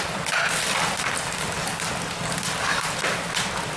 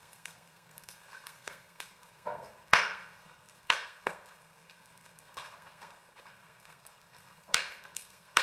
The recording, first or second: first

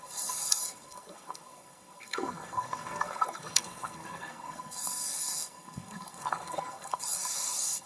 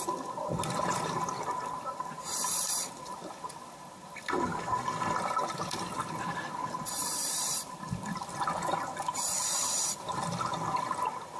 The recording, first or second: second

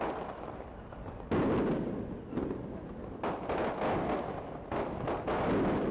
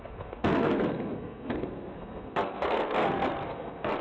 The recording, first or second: first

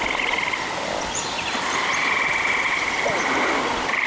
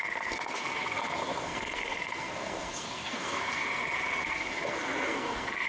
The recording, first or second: first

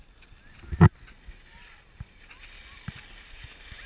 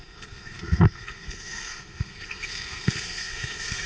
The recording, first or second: first